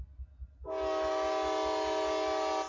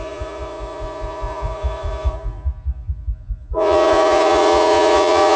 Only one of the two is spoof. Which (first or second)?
second